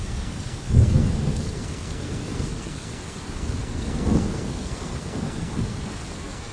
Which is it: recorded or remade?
remade